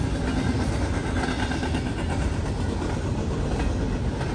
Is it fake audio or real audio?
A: real